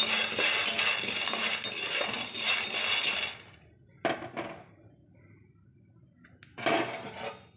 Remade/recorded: recorded